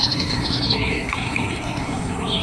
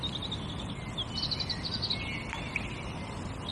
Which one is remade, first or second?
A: first